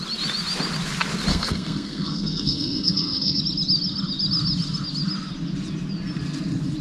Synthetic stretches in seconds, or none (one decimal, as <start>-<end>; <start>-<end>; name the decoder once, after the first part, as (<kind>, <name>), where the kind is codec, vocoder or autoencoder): 1.3-3.4 (codec, SNAC)